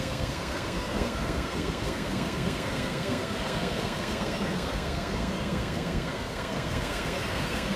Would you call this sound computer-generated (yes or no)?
yes